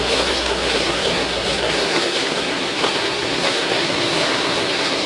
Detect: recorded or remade remade